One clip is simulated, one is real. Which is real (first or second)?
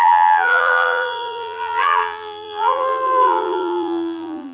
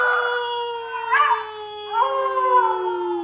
second